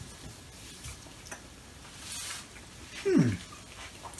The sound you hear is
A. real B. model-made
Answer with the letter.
A